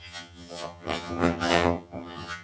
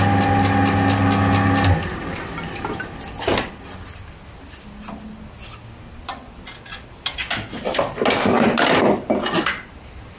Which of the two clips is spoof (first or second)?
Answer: first